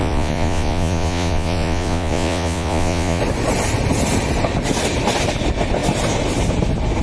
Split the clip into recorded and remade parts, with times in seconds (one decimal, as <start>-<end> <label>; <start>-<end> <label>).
0.0-3.2 remade; 3.2-7.0 recorded